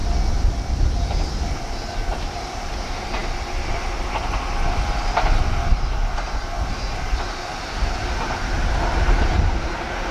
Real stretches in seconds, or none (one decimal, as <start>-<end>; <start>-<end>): 0.0-10.1